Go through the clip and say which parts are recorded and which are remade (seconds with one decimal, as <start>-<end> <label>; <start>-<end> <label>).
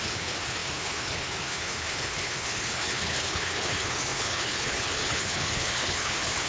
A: 0.0-6.5 remade